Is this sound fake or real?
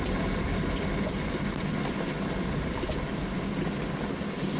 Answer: real